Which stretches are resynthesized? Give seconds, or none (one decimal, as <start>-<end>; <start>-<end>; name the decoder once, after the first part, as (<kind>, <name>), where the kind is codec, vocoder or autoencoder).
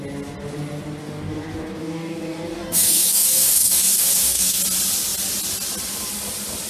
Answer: 1.0-4.6 (codec, DAC)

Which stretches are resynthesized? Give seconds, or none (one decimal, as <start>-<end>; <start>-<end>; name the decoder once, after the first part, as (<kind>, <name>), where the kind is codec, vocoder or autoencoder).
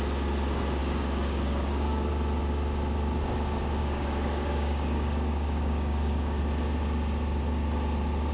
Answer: 0.8-2.1 (codec, DAC); 3.8-6.4